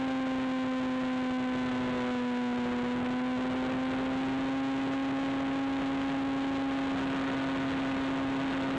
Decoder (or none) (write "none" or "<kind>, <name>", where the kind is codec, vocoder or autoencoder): none